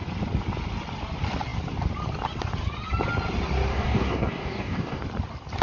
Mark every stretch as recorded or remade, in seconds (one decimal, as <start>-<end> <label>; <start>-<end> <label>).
0.0-3.7 recorded; 3.7-5.0 remade; 5.0-5.6 recorded